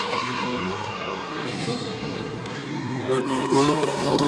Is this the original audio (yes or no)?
no